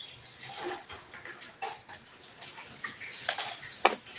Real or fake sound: real